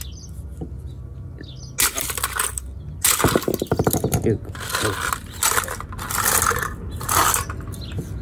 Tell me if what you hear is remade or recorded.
recorded